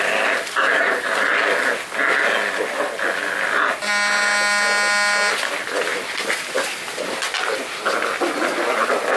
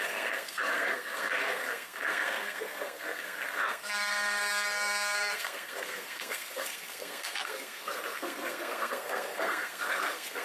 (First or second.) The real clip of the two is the first